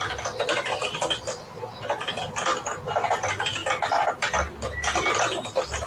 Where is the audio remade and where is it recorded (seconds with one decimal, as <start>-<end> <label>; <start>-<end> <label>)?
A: 0.0-5.9 recorded